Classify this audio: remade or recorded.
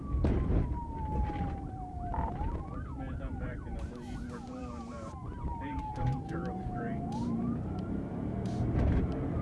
remade